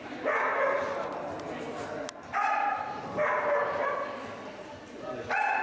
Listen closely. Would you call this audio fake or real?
real